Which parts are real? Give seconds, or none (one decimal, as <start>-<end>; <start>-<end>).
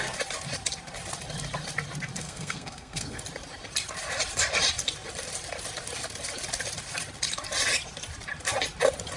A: 0.0-2.2; 3.2-9.2